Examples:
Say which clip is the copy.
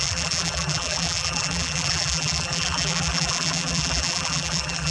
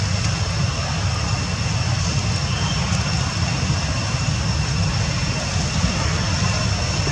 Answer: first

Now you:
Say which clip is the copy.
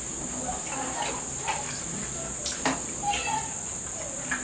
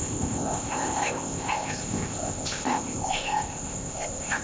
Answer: second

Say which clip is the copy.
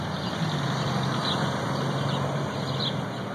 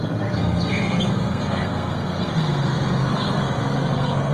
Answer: second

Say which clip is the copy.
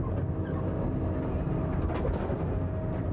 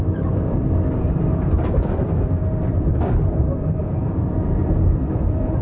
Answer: second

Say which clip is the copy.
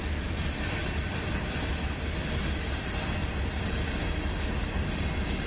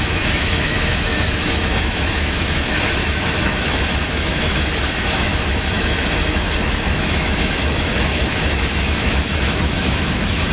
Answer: second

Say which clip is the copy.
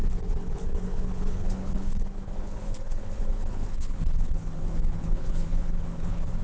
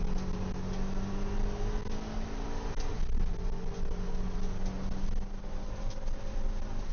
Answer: first